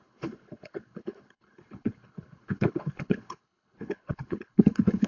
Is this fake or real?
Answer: fake